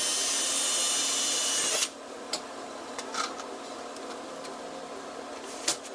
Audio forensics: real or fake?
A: real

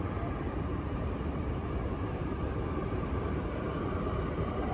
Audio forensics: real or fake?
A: fake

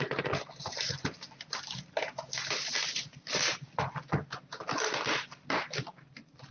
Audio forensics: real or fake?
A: real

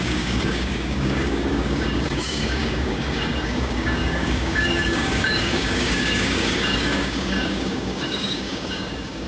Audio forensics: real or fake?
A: fake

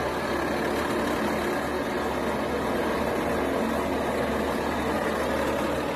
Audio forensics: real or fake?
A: real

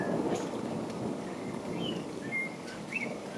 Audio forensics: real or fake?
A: fake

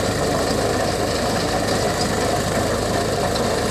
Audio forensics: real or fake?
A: real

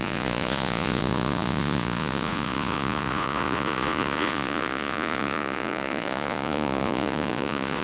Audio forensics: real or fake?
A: fake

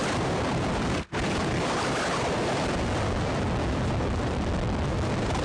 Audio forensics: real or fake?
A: fake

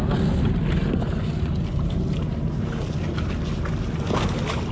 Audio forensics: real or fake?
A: real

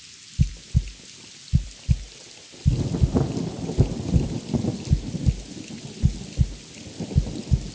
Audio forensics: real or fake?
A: real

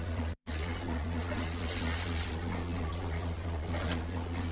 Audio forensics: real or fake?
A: fake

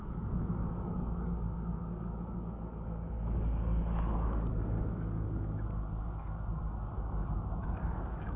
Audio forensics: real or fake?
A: fake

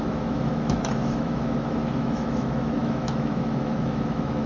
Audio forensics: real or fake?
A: fake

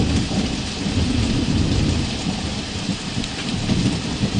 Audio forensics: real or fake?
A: fake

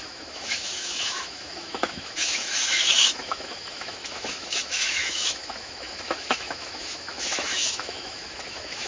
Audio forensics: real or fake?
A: fake